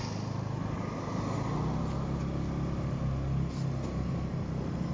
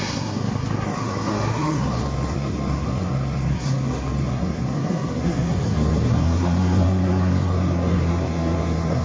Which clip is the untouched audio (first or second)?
first